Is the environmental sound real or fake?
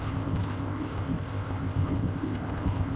fake